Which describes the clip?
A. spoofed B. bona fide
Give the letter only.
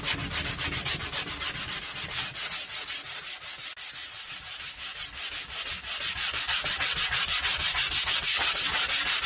B